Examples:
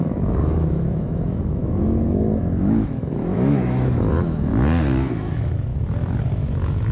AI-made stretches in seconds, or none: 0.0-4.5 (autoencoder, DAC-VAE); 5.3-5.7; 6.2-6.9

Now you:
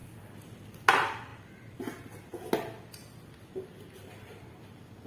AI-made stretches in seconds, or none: none

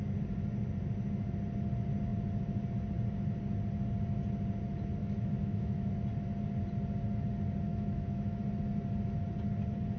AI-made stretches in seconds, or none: 5.0-5.9 (autoencoder, DAC-VAE); 7.7-8.4

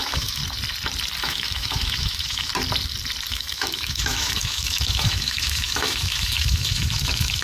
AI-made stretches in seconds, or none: 0.0-0.4 (autoencoder, DAC-VAE); 1.2-2.5; 3.3-7.4

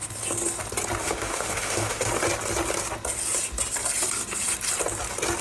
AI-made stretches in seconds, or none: 1.0-2.1 (autoencoder, DAC-VAE)

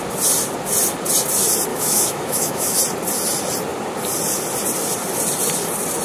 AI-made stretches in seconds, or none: 1.7-2.8 (autoencoder, DAC-VAE)

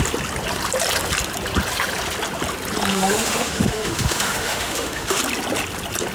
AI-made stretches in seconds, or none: 2.9-5.2 (autoencoder, DAC-VAE)

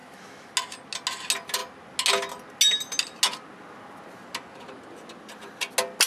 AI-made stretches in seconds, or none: 0.0-0.5 (autoencoder, DAC-VAE)